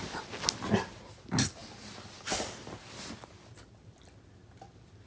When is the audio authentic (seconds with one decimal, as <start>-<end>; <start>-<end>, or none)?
0.0-1.6; 4.0-5.1